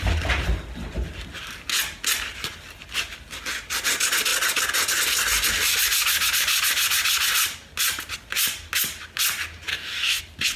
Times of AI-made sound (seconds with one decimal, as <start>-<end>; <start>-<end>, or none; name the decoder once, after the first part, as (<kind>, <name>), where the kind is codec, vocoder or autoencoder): 9.7-10.2 (codec, DAC)